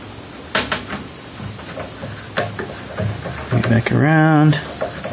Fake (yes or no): no